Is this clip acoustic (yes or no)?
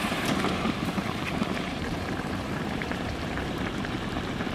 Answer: no